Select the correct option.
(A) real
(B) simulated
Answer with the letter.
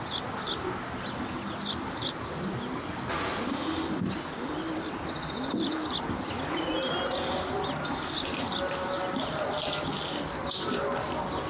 A